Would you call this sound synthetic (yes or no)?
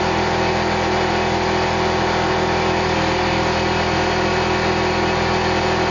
no